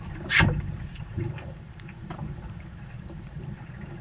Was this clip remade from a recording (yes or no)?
yes